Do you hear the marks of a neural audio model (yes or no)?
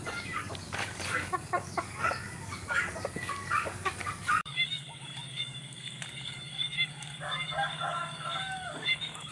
yes